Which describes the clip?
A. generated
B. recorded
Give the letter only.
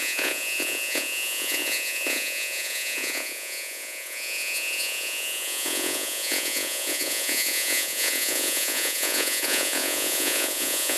A